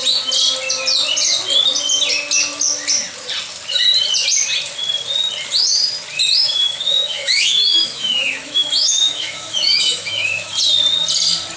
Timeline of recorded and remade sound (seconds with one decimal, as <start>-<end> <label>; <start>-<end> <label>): 0.0-6.4 recorded; 6.4-10.6 remade; 10.6-11.6 recorded

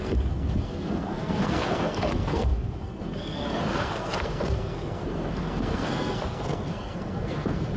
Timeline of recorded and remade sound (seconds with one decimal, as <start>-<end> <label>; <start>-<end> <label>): 0.0-7.8 remade

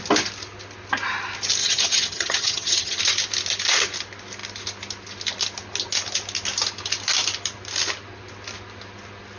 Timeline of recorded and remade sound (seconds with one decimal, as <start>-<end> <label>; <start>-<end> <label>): 0.0-1.6 recorded; 1.6-3.0 remade; 3.0-9.4 recorded

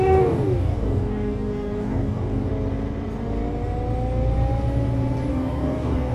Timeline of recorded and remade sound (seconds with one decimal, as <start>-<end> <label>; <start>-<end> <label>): 0.0-2.5 remade; 2.5-5.3 recorded; 5.3-6.1 remade

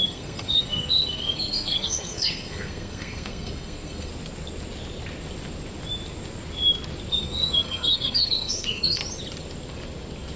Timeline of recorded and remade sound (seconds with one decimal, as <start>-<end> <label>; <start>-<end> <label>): 0.0-4.1 remade; 4.1-7.1 recorded; 7.1-9.0 remade; 9.0-10.4 recorded

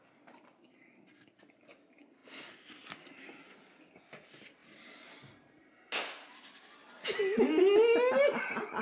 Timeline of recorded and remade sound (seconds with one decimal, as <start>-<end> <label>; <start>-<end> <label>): 0.0-8.8 recorded

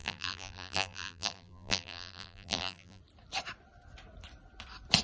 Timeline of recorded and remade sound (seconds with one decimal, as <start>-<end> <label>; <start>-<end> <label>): 0.0-3.0 remade; 3.0-5.0 recorded